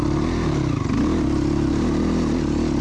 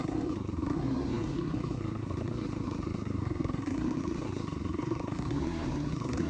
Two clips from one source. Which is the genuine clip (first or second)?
first